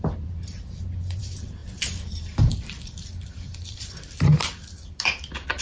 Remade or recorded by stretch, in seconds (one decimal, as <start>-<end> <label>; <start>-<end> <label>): 0.0-5.6 remade